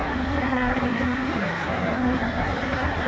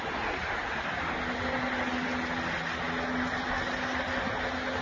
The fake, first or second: first